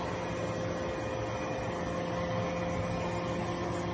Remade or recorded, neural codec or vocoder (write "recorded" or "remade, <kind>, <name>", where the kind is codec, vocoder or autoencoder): recorded